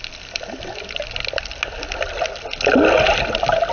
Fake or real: real